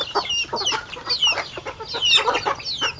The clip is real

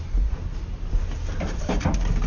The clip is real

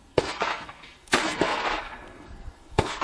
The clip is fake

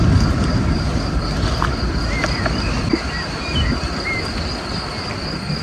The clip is real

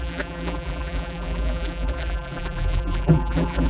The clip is fake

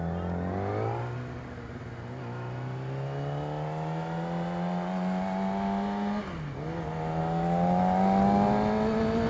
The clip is real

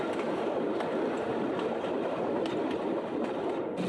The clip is real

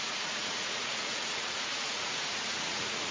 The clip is fake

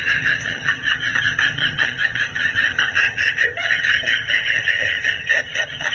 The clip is fake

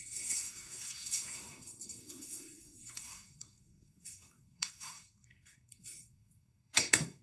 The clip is fake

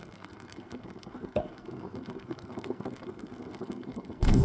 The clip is fake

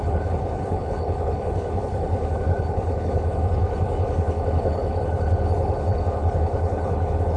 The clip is fake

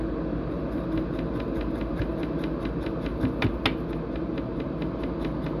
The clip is real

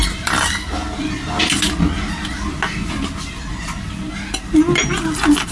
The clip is real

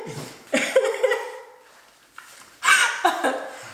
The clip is fake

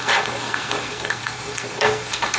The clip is fake